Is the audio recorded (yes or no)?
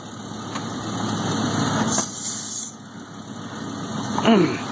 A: yes